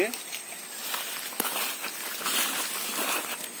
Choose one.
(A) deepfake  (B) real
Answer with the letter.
A